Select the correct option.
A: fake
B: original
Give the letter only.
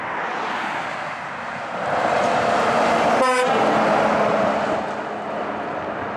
B